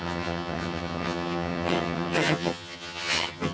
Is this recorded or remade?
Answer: remade